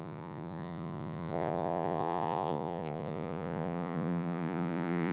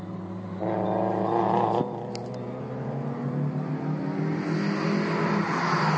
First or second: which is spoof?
first